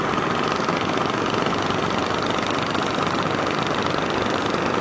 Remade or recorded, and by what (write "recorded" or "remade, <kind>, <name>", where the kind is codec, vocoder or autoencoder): recorded